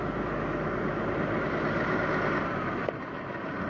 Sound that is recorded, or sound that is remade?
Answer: recorded